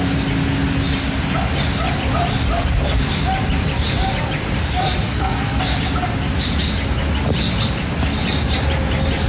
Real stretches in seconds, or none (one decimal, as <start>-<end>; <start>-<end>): 0.0-5.1; 5.6-9.3